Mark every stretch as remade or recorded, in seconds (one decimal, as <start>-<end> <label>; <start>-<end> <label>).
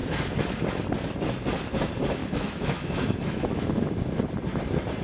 0.0-2.2 recorded; 2.2-3.7 remade; 3.7-5.0 recorded